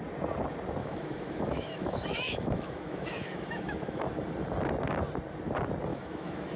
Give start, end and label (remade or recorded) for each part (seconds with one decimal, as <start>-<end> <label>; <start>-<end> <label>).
0.0-0.8 recorded; 0.8-4.0 remade; 4.0-5.9 recorded; 5.9-6.6 remade